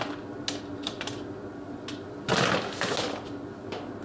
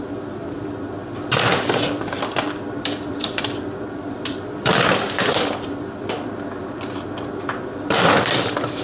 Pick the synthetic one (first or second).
second